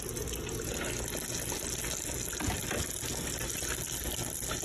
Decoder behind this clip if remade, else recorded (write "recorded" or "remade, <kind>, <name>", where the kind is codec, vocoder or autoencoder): recorded